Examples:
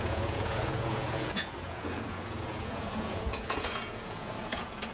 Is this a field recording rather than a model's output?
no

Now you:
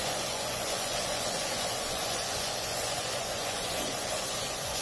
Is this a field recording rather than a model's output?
no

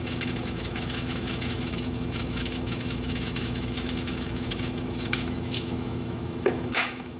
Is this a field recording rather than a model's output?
no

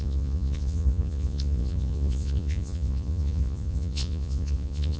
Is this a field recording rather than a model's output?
no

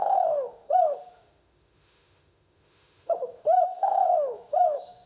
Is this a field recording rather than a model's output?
no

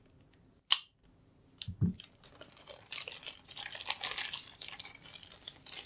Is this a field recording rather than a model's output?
yes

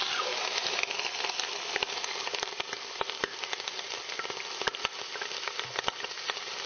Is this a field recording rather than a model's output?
yes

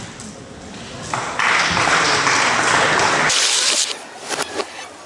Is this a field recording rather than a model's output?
yes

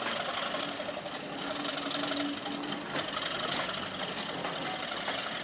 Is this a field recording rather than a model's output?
yes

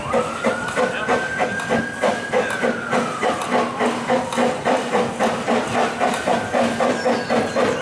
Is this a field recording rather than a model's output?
yes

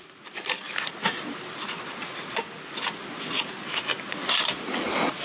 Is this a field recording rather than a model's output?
yes